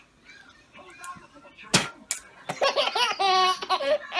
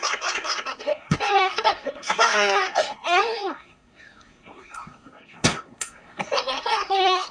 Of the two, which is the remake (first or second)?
second